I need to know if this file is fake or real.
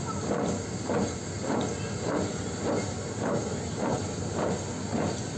real